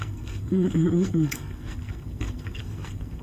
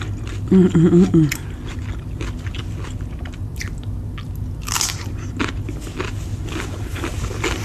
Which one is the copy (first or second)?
first